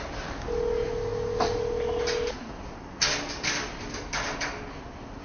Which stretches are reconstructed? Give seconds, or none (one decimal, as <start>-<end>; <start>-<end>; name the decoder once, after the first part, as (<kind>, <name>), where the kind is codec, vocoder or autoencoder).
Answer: none